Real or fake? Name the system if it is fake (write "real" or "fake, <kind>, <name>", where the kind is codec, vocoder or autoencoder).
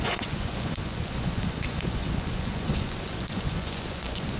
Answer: fake, vocoder, Vocos